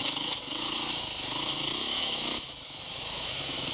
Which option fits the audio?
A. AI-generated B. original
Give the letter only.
A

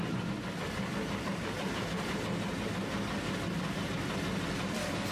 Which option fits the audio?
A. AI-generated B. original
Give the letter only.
B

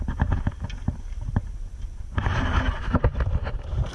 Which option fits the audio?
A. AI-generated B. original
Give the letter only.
A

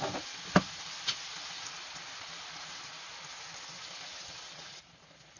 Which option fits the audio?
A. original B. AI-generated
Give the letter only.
A